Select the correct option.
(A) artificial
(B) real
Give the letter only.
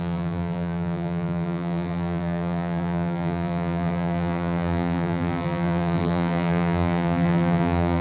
A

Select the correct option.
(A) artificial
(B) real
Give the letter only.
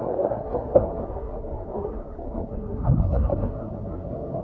A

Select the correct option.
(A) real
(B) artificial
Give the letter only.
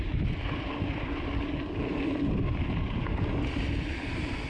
A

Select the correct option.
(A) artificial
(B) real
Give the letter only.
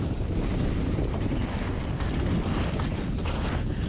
B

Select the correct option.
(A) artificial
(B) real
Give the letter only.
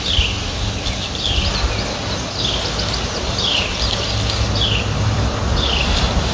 B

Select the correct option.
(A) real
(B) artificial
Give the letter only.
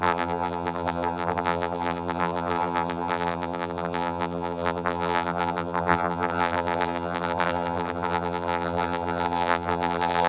B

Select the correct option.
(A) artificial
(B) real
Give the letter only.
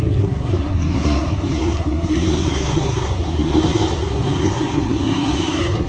A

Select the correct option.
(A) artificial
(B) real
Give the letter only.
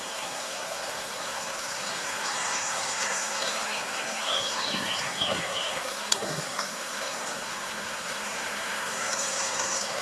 A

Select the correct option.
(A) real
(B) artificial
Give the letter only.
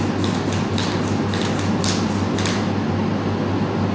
A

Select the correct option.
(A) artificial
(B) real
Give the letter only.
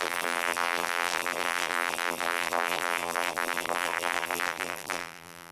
A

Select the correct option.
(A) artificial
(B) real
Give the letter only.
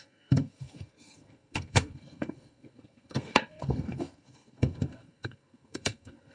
A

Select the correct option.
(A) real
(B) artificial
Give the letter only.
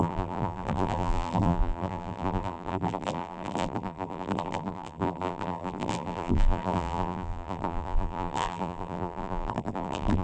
B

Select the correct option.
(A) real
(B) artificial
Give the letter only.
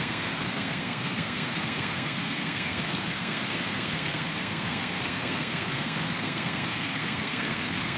B